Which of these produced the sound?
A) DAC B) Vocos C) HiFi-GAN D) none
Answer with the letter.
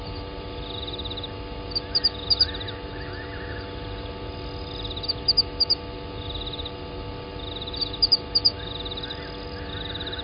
D